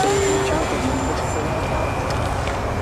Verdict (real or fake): real